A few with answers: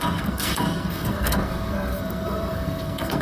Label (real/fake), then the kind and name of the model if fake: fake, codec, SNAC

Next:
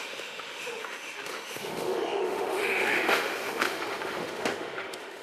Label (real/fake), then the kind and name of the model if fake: fake, autoencoder, DAC-VAE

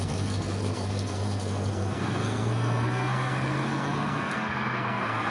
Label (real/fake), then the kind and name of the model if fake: fake, codec, SNAC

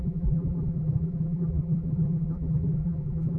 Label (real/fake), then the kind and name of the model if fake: fake, vocoder, BigVGAN v2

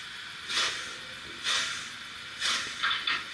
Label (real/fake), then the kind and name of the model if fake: real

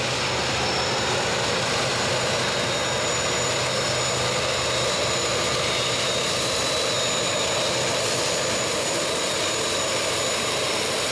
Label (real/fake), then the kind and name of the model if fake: real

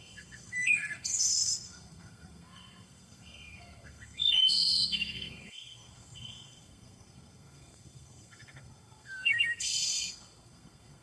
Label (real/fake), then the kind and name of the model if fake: fake, codec, SNAC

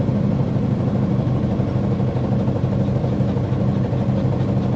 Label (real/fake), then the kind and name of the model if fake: real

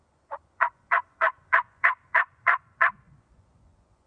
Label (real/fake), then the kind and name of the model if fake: fake, vocoder, Vocos